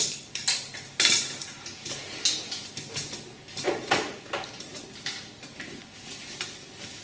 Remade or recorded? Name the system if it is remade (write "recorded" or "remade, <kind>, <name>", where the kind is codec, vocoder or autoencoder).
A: recorded